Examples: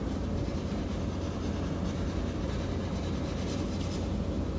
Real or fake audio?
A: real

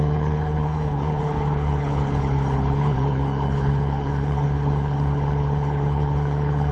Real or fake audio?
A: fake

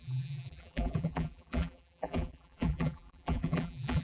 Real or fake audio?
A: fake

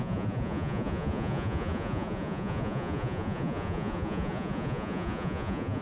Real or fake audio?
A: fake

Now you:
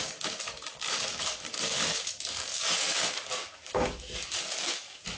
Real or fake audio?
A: fake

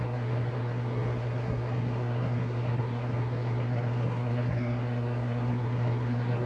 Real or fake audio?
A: fake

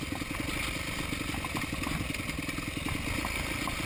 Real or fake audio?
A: real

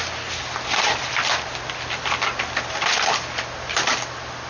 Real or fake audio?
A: real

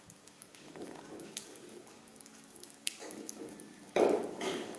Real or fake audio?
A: fake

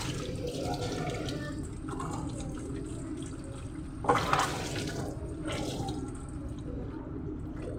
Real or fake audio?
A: real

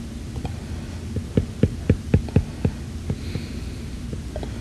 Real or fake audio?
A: real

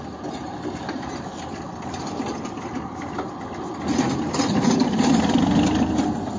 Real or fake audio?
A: real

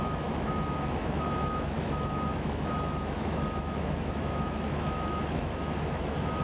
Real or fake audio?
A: fake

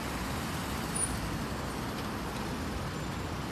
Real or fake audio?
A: real